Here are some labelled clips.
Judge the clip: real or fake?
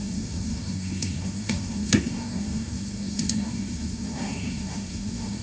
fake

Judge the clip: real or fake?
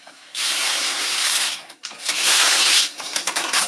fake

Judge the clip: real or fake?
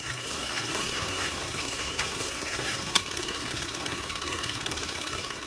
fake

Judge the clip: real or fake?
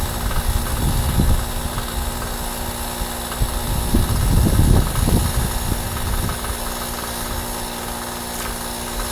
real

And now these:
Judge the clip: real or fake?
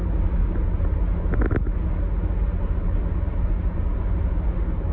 real